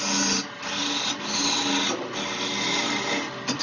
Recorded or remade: recorded